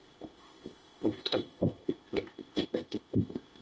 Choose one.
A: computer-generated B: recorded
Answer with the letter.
A